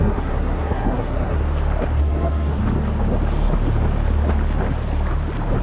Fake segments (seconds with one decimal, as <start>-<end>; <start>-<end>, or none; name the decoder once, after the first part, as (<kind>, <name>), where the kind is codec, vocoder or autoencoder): 0.0-1.4 (codec, SNAC); 2.0-2.6